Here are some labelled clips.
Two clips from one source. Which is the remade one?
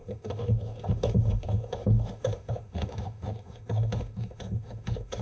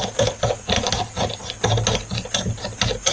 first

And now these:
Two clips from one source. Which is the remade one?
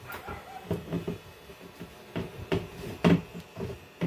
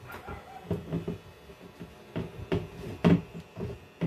first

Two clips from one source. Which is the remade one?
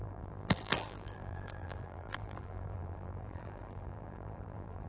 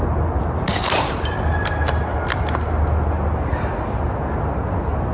first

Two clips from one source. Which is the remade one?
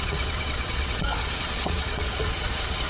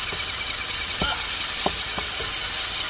first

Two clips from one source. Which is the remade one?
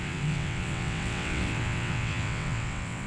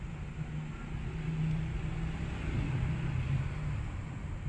first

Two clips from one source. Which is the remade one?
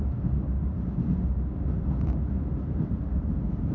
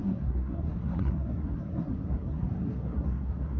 second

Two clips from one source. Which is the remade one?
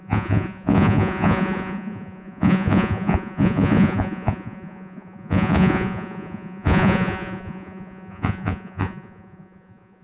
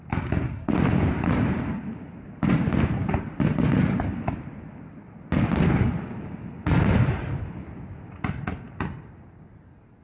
first